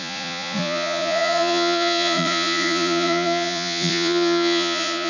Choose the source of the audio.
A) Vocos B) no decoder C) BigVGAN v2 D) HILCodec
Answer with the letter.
A